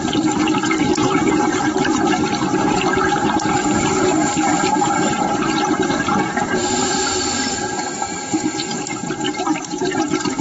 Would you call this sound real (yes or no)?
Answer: no